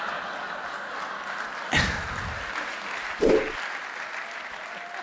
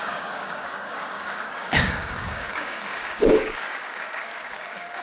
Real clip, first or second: first